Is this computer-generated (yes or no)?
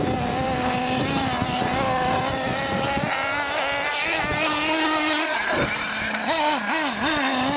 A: no